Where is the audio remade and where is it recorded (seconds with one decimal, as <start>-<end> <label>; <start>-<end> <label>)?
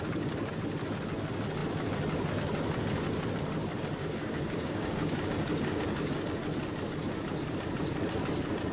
0.0-4.0 recorded; 4.0-6.2 remade; 6.2-8.7 recorded